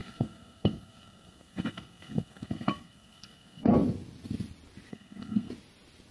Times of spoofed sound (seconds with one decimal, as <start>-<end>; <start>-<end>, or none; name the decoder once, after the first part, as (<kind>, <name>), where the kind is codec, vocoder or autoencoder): 0.0-3.7 (codec, SNAC); 4.9-5.5